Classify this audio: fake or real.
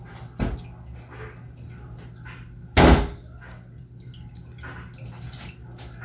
real